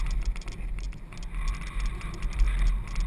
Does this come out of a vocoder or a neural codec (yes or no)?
no